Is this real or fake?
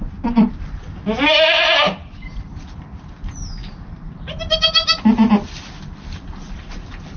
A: real